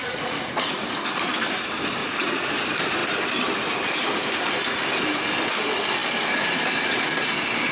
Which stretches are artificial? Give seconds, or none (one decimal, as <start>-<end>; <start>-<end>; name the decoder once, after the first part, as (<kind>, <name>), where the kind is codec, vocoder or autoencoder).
0.0-0.9 (vocoder, Vocos); 2.0-2.5